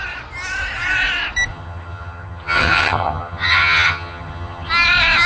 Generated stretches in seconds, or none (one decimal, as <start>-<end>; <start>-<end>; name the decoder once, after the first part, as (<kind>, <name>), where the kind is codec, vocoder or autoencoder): 1.5-4.7 (vocoder, HiFi-GAN)